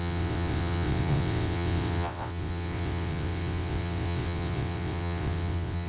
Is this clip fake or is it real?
fake